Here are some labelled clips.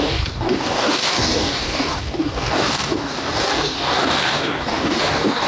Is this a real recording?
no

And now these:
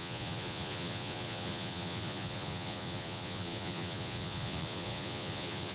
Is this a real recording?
no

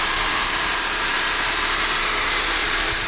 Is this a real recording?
no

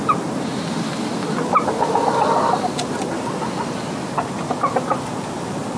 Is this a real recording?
yes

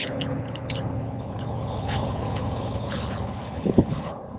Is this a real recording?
no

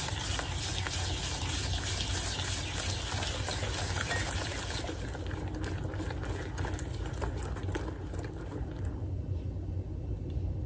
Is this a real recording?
yes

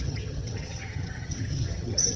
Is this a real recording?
no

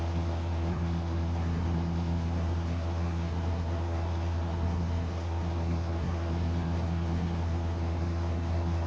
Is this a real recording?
no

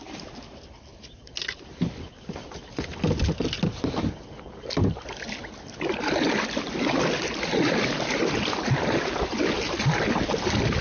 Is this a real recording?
yes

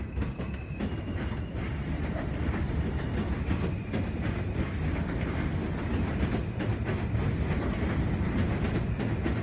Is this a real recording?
yes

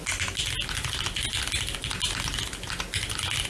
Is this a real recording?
yes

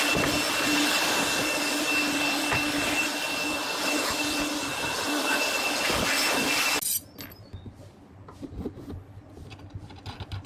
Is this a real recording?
yes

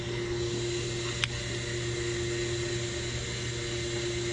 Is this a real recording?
yes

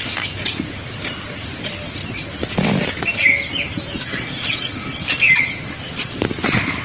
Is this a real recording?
yes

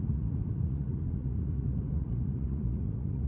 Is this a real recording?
no